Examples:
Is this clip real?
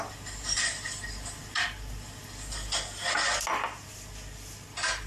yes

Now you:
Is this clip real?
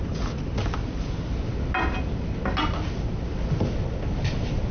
yes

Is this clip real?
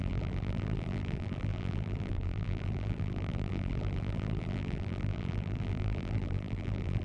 no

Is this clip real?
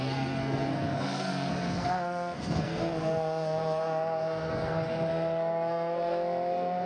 no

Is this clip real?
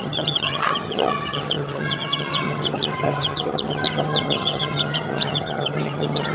no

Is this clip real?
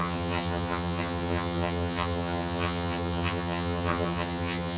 no